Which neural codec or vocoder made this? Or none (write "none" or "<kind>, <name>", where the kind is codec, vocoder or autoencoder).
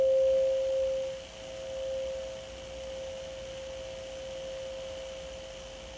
none